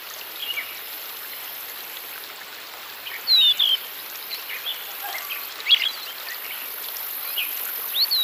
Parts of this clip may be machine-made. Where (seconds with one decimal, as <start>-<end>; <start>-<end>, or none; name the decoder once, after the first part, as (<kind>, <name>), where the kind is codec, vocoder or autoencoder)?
none